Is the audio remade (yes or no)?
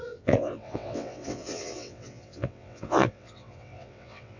yes